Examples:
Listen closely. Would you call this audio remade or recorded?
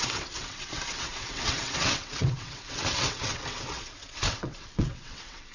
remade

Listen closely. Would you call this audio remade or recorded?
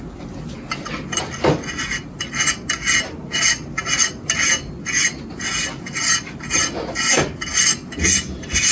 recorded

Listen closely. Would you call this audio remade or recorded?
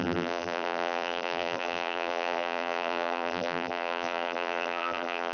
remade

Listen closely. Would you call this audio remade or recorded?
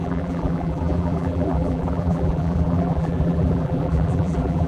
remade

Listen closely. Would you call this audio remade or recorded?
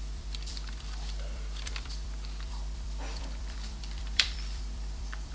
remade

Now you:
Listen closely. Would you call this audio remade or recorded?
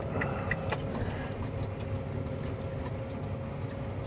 recorded